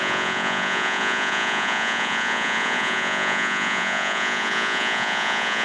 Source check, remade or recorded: remade